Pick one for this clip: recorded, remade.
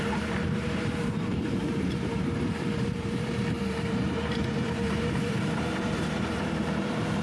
remade